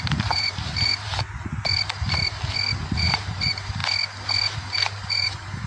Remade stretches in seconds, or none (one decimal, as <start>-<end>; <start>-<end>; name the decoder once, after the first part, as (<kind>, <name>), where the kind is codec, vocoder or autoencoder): 0.0-1.1 (vocoder, BigVGAN v2); 2.8-3.8; 4.5-5.7